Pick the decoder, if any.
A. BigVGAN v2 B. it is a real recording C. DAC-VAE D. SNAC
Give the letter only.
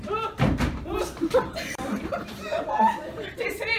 A